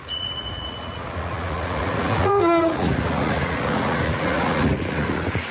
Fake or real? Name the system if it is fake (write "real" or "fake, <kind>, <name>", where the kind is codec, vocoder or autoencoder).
fake, vocoder, Vocos